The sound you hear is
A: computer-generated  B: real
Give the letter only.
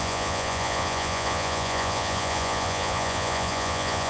A